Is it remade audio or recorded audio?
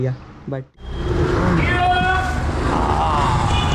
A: recorded